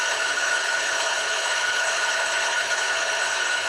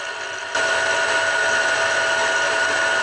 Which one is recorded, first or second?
second